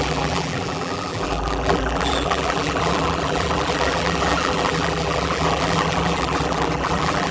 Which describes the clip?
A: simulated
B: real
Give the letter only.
A